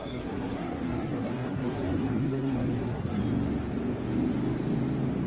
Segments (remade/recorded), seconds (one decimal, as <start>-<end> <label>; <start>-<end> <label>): 0.0-3.2 remade; 3.2-5.3 recorded